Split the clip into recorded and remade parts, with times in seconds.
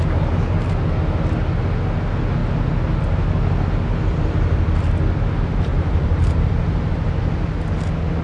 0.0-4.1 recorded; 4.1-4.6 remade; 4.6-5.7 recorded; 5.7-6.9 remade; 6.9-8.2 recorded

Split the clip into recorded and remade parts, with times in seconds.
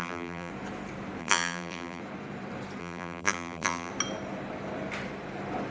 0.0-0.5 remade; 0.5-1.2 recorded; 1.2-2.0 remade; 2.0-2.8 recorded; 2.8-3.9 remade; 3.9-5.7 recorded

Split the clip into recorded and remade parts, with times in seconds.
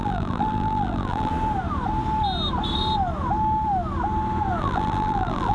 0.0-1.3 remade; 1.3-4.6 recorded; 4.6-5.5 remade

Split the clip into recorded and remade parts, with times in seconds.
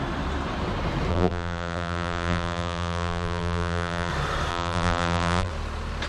0.0-1.1 recorded; 1.1-4.1 remade; 4.1-4.5 recorded; 4.5-5.5 remade; 5.5-6.1 recorded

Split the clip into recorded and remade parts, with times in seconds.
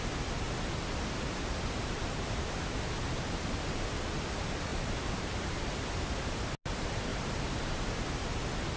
0.0-4.7 recorded; 4.7-5.5 remade; 5.5-7.1 recorded; 7.1-7.8 remade; 7.8-8.8 recorded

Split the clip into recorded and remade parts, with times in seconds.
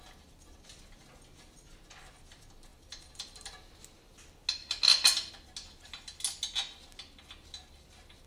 0.0-8.3 recorded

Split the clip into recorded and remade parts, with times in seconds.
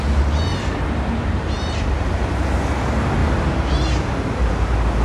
0.0-0.5 recorded; 0.5-2.3 remade; 2.3-3.2 recorded; 3.2-3.9 remade; 3.9-5.0 recorded